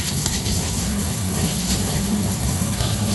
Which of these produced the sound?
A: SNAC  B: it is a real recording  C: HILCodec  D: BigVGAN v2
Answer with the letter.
A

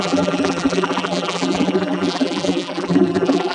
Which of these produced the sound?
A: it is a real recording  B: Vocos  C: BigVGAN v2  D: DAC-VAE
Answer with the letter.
C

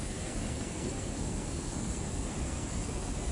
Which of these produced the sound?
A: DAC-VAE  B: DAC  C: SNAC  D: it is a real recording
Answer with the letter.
C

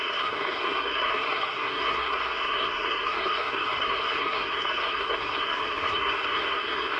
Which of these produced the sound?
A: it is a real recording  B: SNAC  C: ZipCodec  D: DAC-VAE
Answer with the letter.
B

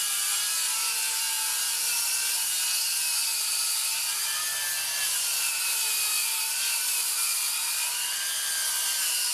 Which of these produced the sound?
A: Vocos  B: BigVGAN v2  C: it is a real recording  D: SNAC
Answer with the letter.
C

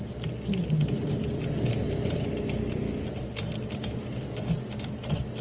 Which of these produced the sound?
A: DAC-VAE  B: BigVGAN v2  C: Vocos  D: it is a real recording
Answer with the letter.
D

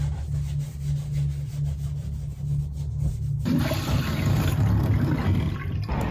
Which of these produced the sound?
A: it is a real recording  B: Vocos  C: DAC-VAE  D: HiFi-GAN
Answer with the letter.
A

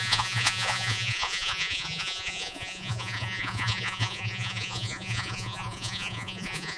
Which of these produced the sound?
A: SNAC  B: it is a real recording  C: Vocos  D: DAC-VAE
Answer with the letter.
C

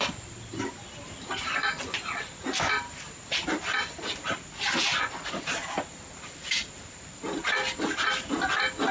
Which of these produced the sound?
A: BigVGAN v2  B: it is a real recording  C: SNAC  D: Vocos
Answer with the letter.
B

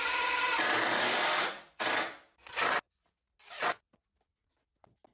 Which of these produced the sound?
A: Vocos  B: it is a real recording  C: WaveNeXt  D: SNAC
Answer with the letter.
B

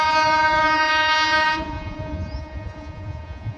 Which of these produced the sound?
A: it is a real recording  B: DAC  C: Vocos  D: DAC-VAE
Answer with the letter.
C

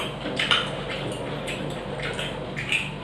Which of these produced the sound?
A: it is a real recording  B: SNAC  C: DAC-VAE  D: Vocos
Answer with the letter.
A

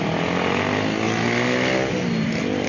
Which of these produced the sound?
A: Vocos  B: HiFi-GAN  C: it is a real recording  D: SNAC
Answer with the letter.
C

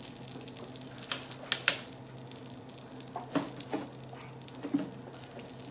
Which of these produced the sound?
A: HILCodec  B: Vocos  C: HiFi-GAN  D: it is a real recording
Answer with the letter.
D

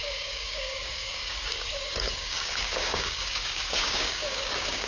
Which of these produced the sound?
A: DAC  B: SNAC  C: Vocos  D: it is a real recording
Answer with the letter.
A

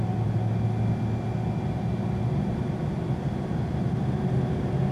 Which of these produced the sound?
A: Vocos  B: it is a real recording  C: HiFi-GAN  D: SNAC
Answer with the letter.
B